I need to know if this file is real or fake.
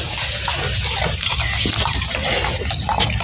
real